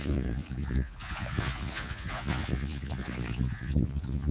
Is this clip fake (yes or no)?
yes